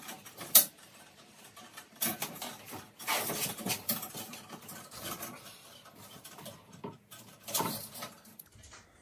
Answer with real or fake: fake